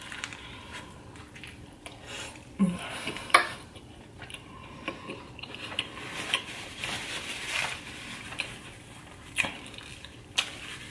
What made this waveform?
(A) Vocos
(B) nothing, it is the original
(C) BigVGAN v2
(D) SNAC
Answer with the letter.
C